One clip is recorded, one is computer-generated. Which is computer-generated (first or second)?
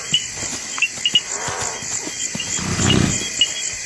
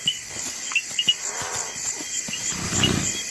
second